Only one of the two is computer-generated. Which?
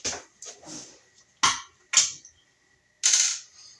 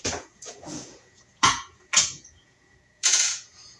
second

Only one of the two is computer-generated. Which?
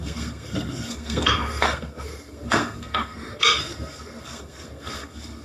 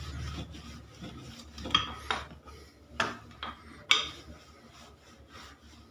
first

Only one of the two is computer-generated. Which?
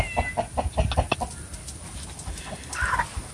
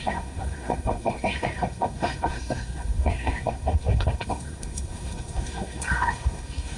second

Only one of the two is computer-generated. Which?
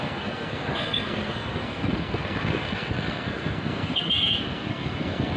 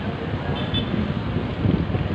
first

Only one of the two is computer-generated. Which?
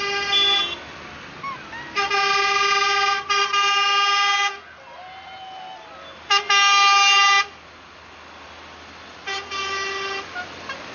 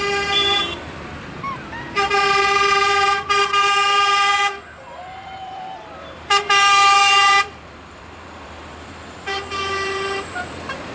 second